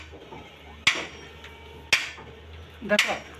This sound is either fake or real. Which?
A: real